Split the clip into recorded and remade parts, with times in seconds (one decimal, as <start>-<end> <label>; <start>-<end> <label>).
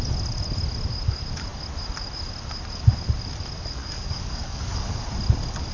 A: 0.0-3.8 recorded; 3.8-5.0 remade; 5.0-5.7 recorded